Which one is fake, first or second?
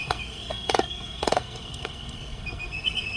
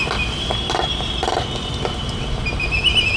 first